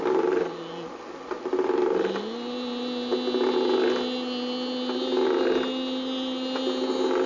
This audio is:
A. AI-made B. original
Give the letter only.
B